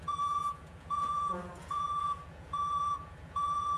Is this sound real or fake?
fake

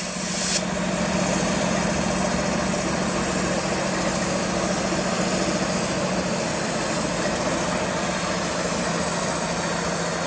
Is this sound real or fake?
real